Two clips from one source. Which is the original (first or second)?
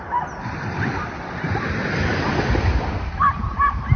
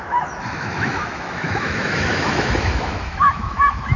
first